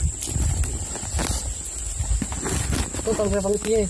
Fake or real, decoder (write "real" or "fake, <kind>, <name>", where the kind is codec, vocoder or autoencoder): real